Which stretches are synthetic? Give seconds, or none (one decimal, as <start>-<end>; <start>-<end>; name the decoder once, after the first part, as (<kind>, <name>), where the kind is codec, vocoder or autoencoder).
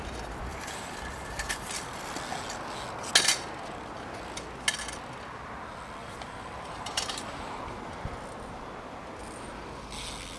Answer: 0.5-1.7 (vocoder, BigVGAN v2); 6.0-7.5